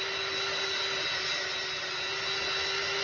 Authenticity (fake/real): real